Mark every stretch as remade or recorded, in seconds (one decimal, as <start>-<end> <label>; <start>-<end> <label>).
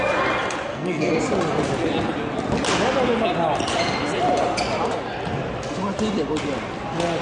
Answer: 0.0-0.7 recorded; 0.7-1.2 remade; 1.2-7.2 recorded